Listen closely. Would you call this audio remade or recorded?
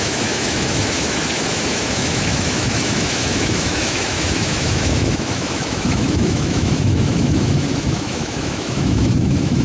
remade